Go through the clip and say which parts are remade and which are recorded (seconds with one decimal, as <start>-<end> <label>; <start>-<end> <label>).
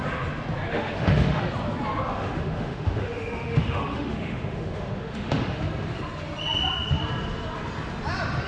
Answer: 0.0-0.7 recorded; 0.7-1.4 remade; 1.4-2.1 recorded; 2.1-5.6 remade; 5.6-8.5 recorded